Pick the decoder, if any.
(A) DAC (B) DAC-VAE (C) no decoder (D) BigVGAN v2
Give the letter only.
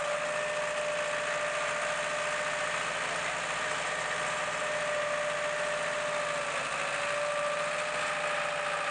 C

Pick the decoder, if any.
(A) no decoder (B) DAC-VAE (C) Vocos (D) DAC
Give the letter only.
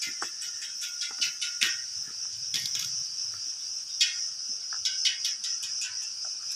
A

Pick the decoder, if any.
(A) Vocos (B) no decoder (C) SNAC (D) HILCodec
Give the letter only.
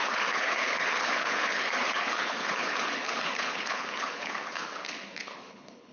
D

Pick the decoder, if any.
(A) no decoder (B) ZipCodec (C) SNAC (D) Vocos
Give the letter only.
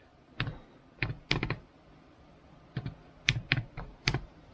A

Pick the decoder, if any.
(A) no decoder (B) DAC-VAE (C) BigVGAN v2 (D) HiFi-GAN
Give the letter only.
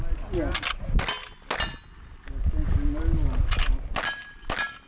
A